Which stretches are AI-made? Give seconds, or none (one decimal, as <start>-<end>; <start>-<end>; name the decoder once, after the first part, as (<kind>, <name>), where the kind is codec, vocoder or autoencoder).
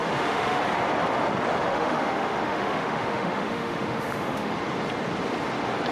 0.0-0.6 (autoencoder, DAC-VAE); 1.7-4.5